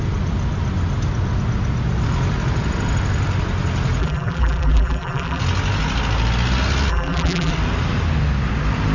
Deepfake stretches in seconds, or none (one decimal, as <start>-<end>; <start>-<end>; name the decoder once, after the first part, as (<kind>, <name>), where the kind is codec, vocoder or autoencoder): 4.0-5.4 (vocoder, BigVGAN v2); 6.9-7.5